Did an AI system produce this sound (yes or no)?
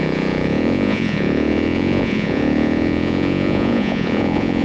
yes